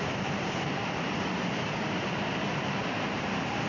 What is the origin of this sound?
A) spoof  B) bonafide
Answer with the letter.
A